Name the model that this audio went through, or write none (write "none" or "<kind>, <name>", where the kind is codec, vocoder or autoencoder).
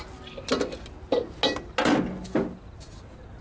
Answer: none